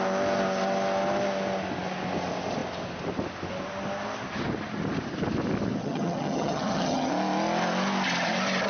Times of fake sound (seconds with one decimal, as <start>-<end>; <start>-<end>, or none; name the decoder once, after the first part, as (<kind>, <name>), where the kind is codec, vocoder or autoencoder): 5.8-7.1 (vocoder, HiFi-GAN)

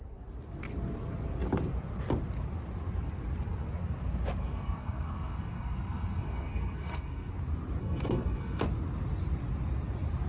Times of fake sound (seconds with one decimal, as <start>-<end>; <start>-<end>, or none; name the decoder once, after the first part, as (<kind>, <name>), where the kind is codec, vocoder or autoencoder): 4.4-7.3 (codec, SNAC); 7.8-8.6